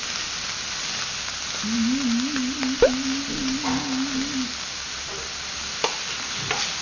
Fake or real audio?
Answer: real